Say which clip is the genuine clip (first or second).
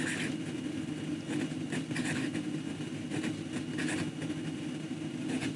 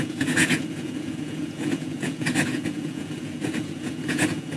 first